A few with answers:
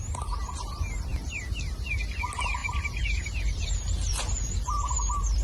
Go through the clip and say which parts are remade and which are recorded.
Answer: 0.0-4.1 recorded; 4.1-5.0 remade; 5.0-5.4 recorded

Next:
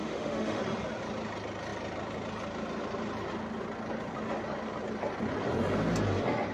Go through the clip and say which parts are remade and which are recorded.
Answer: 0.0-0.6 remade; 0.6-6.5 recorded